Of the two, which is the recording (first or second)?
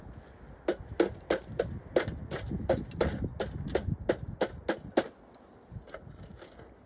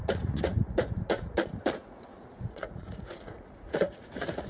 first